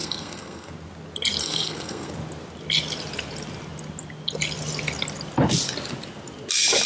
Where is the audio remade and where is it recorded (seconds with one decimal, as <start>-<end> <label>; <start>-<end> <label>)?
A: 0.0-0.7 remade; 0.7-1.4 recorded; 1.4-2.1 remade; 2.1-6.9 recorded